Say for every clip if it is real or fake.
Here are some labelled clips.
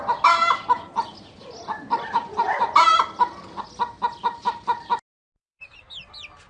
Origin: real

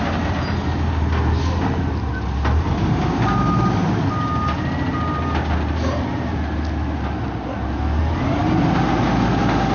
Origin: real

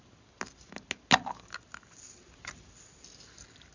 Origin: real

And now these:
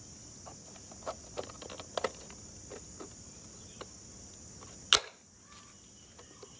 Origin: real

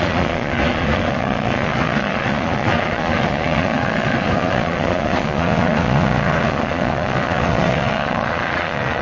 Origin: fake